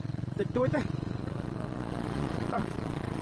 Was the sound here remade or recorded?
remade